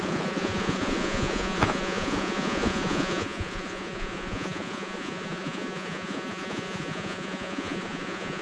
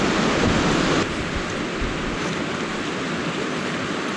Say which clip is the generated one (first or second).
first